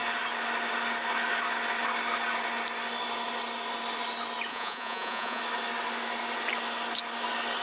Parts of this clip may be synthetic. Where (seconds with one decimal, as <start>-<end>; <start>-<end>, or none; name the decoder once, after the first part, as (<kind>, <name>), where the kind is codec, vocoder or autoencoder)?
4.5-5.4 (vocoder, Vocos)